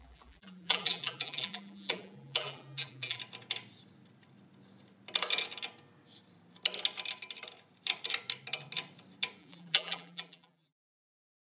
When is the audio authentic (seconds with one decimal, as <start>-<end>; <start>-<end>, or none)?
3.2-9.4